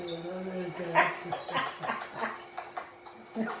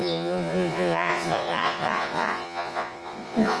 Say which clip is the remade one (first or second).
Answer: second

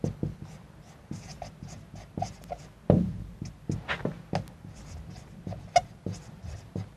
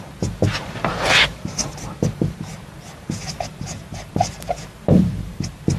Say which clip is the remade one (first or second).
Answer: second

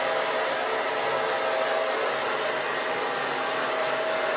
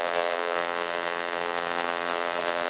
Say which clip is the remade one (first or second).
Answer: second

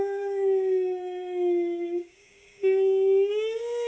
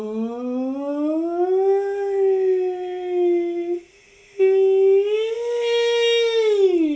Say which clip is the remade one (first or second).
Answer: first